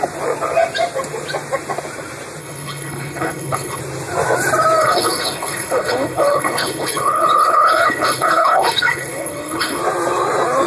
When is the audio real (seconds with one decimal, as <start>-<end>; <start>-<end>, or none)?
0.0-2.4; 3.8-4.8; 9.8-10.7